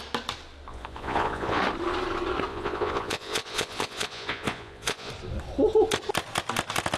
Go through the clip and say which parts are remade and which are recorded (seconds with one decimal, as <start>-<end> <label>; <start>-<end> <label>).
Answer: 0.0-0.7 recorded; 0.7-1.6 remade; 1.6-2.5 recorded; 2.5-5.1 remade; 5.1-7.0 recorded